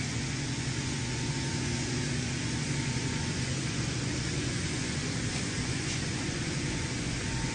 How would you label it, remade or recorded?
remade